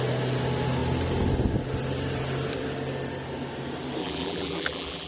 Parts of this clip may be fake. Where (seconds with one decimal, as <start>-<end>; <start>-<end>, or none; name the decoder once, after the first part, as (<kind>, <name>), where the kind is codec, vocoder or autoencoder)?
4.0-5.1 (vocoder, BigVGAN v2)